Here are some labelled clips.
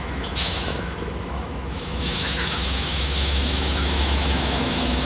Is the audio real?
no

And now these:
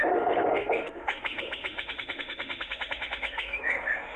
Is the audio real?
no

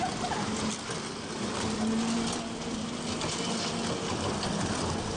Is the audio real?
yes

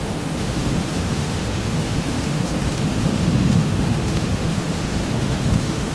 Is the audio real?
no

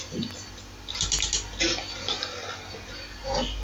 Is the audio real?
yes